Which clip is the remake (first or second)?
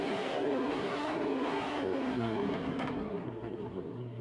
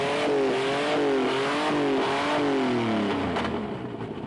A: first